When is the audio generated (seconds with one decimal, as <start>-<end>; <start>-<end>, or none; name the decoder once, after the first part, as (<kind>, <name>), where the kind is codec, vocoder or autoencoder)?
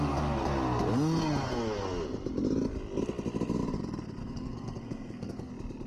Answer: 4.2-5.5 (codec, SNAC)